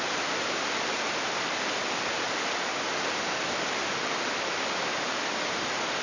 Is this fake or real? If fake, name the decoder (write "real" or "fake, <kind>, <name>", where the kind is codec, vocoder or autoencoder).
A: real